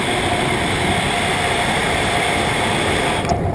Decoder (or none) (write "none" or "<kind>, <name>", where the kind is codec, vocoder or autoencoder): none